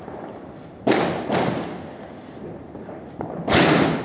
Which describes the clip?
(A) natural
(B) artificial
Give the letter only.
A